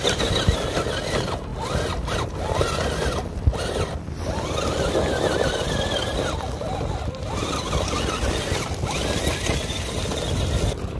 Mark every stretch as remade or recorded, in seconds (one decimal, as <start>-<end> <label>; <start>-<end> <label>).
0.0-11.0 recorded